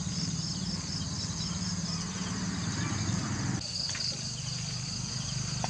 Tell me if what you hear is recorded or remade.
recorded